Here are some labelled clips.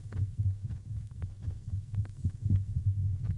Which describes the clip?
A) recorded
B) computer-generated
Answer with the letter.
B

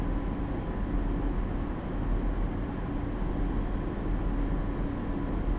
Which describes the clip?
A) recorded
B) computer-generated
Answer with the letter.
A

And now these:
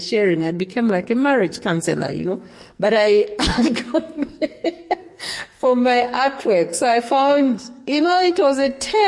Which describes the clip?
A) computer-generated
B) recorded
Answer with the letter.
A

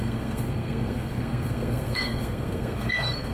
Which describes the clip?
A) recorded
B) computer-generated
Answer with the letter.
B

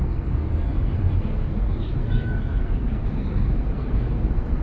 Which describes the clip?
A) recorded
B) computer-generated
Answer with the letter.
B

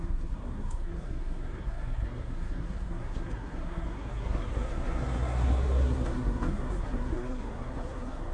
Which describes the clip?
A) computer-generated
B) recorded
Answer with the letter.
A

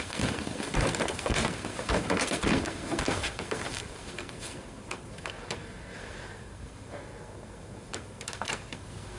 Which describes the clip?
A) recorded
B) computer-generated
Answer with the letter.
B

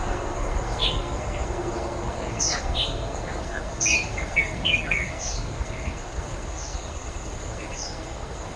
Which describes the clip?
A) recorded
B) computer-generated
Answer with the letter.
B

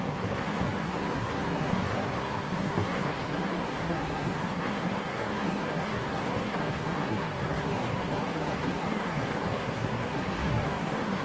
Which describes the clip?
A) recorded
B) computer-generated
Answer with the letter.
B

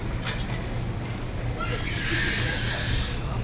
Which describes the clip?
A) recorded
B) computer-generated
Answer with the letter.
A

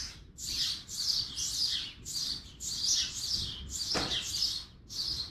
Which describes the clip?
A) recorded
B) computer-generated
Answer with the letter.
A